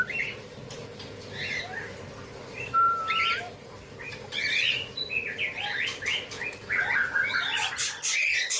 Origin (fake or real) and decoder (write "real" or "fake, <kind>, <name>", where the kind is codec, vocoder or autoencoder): real